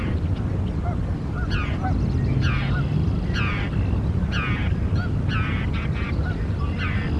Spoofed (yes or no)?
no